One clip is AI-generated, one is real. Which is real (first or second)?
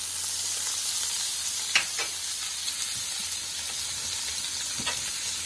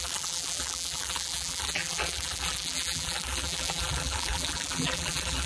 first